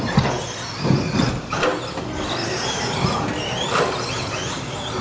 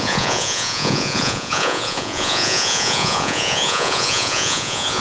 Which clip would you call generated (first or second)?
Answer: second